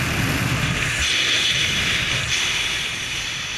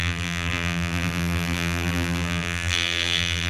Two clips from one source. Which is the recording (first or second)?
first